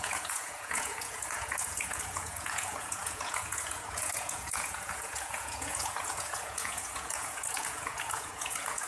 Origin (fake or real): fake